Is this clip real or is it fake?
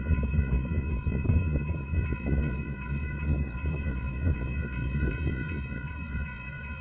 fake